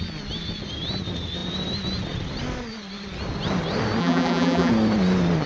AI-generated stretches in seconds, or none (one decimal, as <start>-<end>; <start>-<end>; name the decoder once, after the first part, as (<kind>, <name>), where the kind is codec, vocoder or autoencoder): 4.0-4.7 (vocoder, BigVGAN v2)